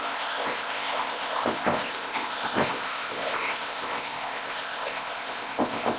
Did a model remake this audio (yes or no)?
yes